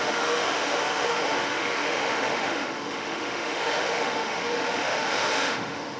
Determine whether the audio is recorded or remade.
remade